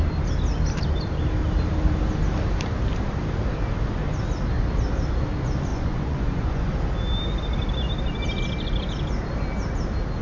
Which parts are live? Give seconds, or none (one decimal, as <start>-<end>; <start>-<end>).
0.0-5.7; 6.7-10.2